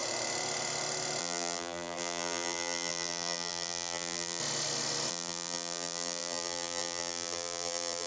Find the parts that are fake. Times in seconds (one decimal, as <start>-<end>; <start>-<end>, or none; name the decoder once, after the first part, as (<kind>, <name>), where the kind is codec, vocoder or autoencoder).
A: 1.2-4.4 (vocoder, BigVGAN v2); 5.1-8.1